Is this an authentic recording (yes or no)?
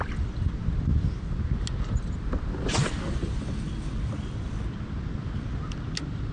yes